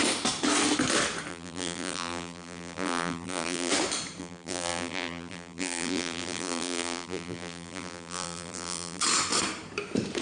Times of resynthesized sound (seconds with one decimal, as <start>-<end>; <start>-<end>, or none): 1.3-3.7; 4.2-9.0